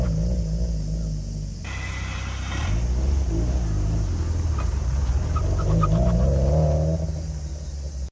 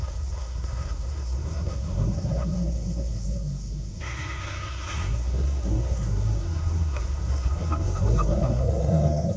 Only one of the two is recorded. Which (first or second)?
first